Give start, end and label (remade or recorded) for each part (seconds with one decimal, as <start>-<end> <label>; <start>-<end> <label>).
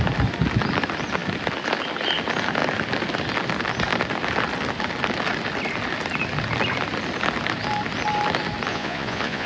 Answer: 0.0-8.7 recorded; 8.7-9.5 remade